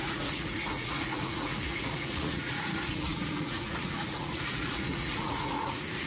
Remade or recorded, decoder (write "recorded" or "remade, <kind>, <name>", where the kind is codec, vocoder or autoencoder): remade, vocoder, Vocos